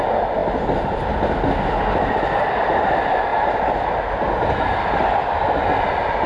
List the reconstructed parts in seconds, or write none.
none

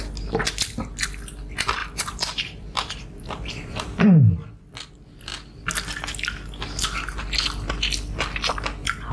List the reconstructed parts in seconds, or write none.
1.8-3.5 (vocoder, BigVGAN v2)

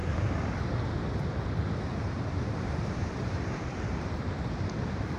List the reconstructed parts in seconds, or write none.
1.9-4.3 (vocoder, BigVGAN v2)